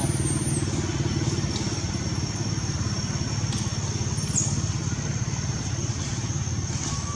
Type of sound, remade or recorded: recorded